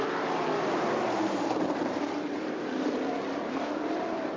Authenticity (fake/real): fake